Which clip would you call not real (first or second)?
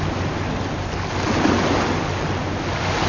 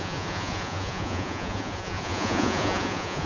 second